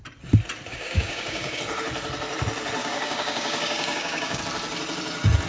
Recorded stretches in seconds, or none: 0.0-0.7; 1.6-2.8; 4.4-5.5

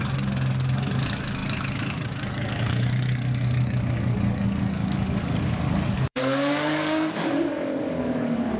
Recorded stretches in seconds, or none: none

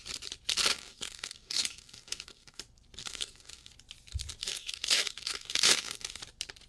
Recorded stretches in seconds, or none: 0.0-0.7; 2.6-3.0; 3.7-4.4; 6.2-6.7

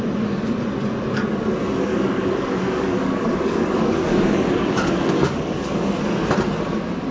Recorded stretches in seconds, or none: 0.0-1.9; 6.2-7.1